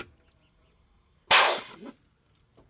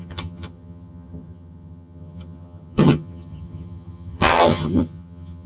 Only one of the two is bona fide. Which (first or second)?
first